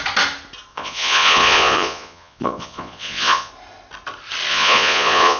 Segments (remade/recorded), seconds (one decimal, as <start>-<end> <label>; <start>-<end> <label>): 0.0-0.7 recorded; 0.7-3.5 remade; 3.5-4.5 recorded; 4.5-5.4 remade